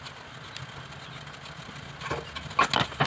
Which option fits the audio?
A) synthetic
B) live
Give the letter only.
B